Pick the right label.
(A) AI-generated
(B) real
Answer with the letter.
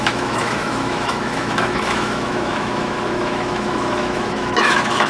A